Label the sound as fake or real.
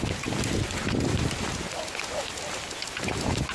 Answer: real